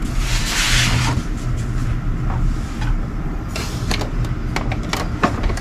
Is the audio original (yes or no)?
yes